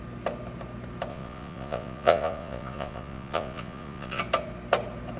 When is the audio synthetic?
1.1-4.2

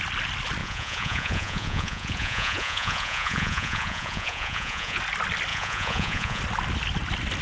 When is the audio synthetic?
0.6-5.0; 5.5-6.4